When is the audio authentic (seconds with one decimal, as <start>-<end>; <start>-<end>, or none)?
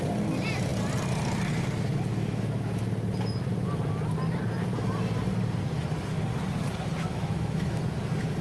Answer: 0.0-2.1; 2.8-7.0; 7.8-8.4